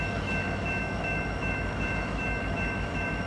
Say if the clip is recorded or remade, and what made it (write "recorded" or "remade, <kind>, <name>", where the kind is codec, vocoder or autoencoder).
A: remade, autoencoder, DAC-VAE